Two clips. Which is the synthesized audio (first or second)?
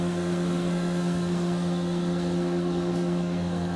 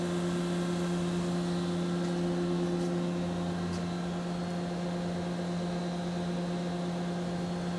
first